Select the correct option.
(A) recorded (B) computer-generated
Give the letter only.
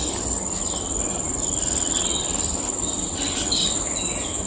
A